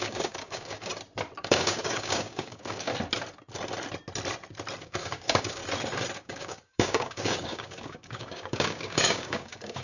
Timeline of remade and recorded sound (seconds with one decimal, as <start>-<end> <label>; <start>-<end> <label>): 0.0-0.9 remade; 0.9-1.4 recorded; 1.4-2.9 remade; 2.9-4.8 recorded; 4.8-5.6 remade; 5.6-6.2 recorded; 6.2-9.8 remade